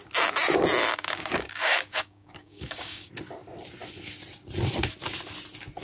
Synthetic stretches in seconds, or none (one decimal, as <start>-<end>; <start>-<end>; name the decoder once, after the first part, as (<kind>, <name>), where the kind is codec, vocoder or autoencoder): 0.9-3.1 (codec, DAC)

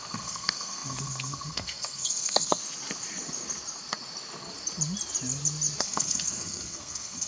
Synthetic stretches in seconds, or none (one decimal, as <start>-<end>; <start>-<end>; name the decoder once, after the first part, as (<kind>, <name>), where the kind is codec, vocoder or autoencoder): 0.0-2.6 (codec, SNAC); 5.8-7.3

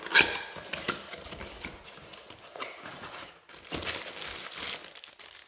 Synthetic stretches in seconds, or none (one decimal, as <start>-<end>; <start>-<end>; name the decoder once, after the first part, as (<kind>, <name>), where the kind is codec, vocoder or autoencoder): 2.5-3.4 (vocoder, Vocos)

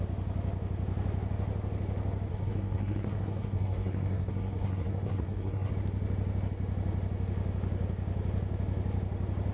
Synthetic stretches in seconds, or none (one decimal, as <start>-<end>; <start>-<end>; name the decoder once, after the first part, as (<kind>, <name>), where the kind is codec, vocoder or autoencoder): 2.3-5.7 (codec, SNAC)

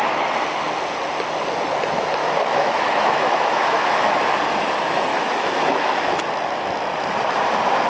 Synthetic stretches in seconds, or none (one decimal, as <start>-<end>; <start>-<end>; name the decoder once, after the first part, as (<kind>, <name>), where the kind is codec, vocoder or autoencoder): 2.2-4.3 (autoencoder, DAC-VAE); 5.1-6.2

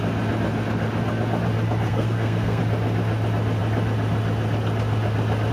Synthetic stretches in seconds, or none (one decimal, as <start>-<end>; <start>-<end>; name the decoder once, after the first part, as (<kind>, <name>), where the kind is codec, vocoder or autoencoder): 1.9-2.6 (codec, SNAC)

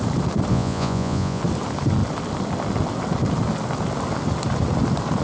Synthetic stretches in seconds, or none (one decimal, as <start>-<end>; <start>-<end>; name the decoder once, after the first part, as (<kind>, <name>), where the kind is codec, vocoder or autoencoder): 0.5-1.4 (vocoder, Vocos)

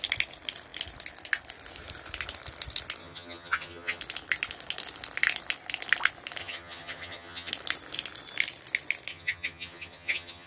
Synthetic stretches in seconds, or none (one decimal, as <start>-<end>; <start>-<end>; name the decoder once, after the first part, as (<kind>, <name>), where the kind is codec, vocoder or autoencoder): 3.0-4.0 (vocoder, HiFi-GAN); 6.4-7.5; 9.1-10.5